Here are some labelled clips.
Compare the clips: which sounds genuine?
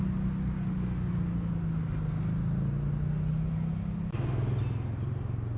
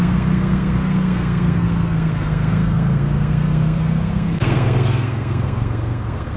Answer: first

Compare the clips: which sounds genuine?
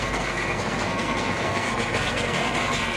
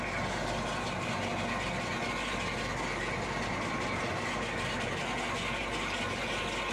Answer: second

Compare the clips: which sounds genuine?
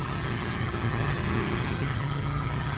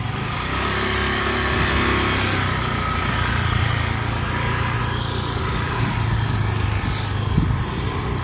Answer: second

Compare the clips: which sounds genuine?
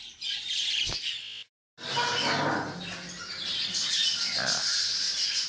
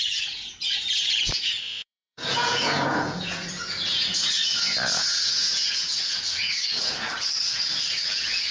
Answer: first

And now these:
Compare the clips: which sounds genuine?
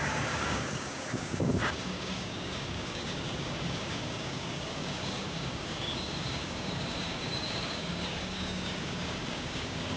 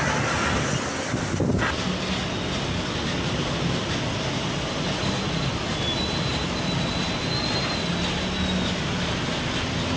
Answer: second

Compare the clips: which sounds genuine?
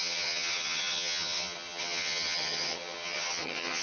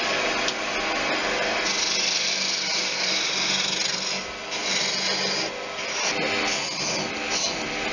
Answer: second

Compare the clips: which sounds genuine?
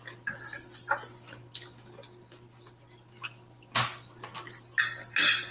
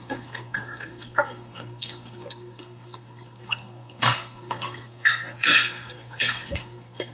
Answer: first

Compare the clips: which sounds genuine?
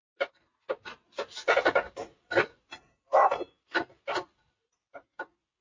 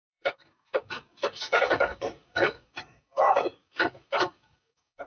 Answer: first